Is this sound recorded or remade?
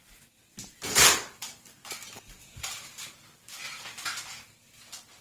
recorded